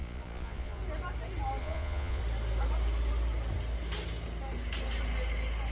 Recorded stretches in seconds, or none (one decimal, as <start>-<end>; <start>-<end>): 0.8-1.6; 2.2-5.7